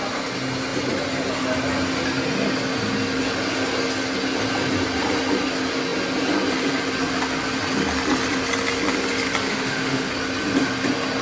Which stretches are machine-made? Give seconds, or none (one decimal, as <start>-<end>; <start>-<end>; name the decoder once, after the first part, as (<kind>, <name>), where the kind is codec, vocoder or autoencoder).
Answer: 9.5-10.1 (autoencoder, DAC-VAE)

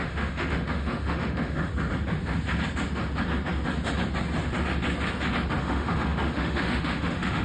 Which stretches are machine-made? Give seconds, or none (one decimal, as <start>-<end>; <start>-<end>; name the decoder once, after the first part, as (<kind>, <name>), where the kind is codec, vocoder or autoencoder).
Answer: 0.0-1.7 (autoencoder, DAC-VAE); 5.6-7.4

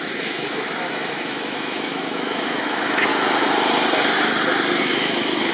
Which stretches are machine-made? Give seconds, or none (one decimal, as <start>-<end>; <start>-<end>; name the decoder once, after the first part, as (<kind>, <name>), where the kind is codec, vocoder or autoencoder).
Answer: 0.0-3.1 (autoencoder, DAC-VAE); 4.8-5.5

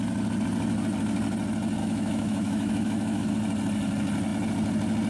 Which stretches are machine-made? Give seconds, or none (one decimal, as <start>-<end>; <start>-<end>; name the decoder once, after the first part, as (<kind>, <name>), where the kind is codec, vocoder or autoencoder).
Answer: 1.8-3.3 (autoencoder, DAC-VAE)